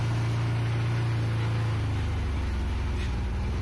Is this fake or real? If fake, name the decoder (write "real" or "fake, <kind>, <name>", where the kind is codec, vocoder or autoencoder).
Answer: real